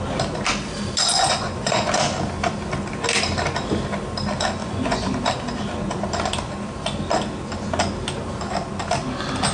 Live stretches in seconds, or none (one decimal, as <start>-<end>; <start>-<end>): 0.0-1.1; 2.0-4.6; 5.1-9.5